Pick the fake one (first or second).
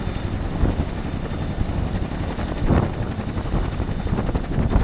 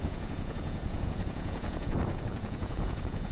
second